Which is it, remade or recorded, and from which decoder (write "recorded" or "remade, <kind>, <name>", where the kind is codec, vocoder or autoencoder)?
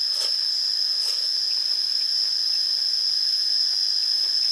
recorded